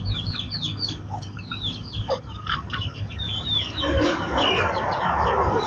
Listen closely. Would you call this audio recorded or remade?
remade